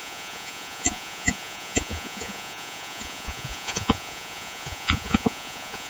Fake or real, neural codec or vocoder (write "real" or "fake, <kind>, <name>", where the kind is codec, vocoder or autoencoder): fake, vocoder, Vocos